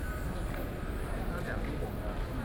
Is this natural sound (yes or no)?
yes